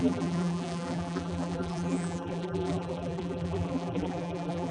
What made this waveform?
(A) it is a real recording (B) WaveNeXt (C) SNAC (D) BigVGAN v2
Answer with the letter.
D